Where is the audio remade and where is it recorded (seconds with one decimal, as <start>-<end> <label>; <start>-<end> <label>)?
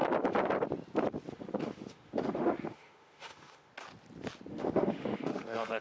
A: 0.0-1.3 recorded; 1.3-3.7 remade; 3.7-4.5 recorded; 4.5-5.8 remade